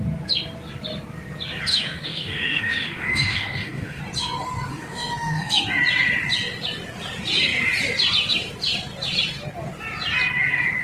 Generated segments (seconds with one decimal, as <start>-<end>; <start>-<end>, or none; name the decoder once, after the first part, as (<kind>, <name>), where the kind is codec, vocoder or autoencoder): 1.7-4.0 (autoencoder, DAC-VAE); 4.7-5.6